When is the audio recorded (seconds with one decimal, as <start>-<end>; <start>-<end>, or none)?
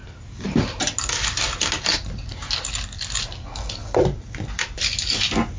0.0-5.6